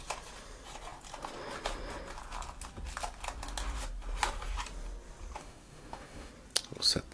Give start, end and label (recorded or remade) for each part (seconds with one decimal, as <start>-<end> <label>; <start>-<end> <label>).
0.0-5.4 recorded; 5.4-6.3 remade; 6.3-7.1 recorded